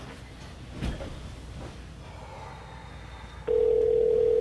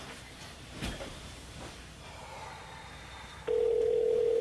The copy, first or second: second